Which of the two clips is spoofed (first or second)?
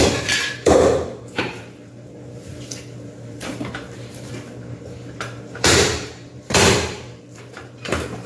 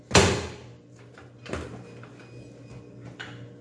first